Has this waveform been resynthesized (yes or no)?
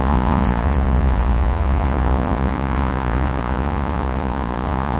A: yes